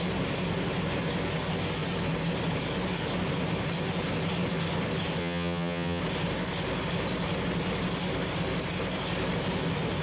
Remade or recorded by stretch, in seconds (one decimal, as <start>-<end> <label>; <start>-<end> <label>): 0.0-5.2 recorded; 5.2-6.0 remade; 6.0-10.0 recorded